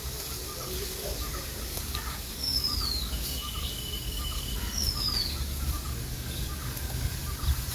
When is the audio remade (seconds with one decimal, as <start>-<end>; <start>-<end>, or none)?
0.0-7.2